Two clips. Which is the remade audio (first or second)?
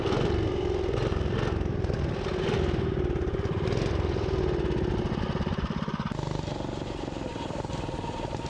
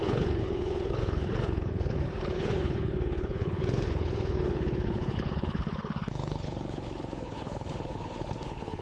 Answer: second